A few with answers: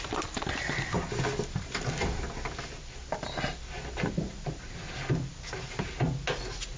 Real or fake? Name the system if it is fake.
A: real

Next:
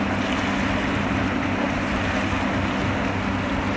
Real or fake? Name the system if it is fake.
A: real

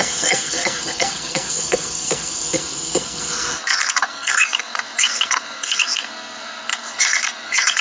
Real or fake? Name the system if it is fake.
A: fake, codec, SNAC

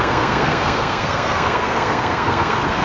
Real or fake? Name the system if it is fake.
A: fake, codec, SNAC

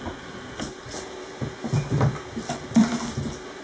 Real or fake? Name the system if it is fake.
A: real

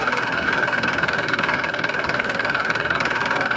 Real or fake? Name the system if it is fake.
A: fake, codec, SNAC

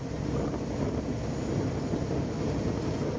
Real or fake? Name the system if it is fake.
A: real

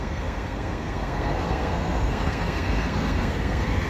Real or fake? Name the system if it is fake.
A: fake, codec, SNAC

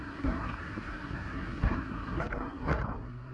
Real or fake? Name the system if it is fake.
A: fake, codec, SNAC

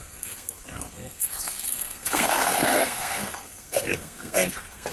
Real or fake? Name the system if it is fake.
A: fake, codec, SNAC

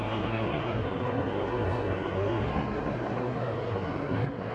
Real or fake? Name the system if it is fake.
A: fake, codec, SNAC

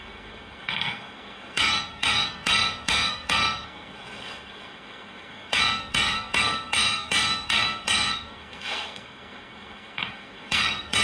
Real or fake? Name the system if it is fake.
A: fake, codec, SNAC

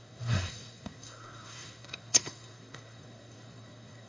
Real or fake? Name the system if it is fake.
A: fake, codec, SNAC